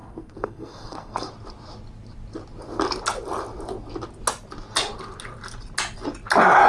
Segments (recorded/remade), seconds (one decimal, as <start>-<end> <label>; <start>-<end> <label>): 0.0-1.3 remade; 1.3-6.7 recorded